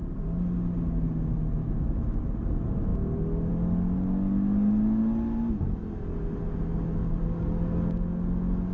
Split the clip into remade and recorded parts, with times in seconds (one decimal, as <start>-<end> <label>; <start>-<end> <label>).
0.0-1.6 recorded; 1.6-2.2 remade; 2.2-8.7 recorded